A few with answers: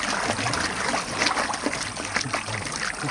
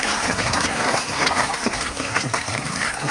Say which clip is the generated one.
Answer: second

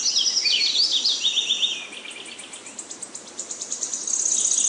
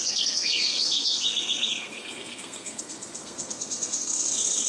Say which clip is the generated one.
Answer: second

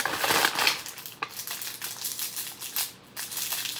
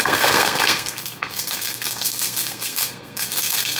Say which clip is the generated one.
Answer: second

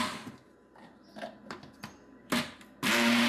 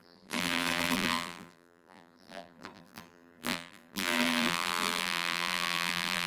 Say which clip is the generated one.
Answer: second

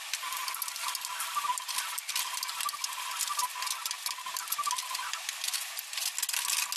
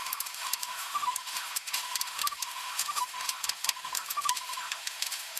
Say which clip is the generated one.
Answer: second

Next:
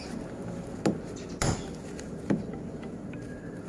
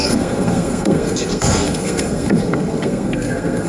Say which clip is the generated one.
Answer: second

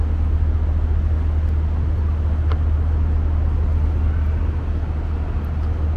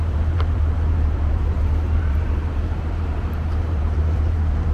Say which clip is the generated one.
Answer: second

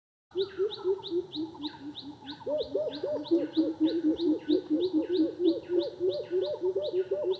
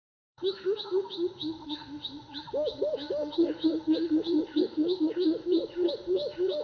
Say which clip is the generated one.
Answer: second